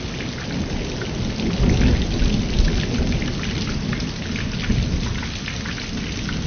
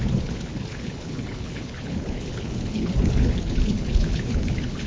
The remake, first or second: second